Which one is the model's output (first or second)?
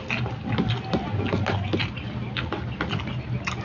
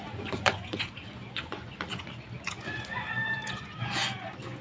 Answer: second